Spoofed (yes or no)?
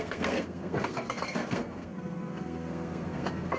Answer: yes